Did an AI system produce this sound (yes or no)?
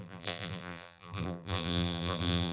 yes